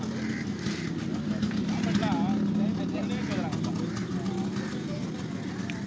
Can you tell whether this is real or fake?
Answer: real